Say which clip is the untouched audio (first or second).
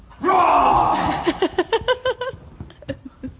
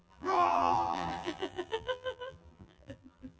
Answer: first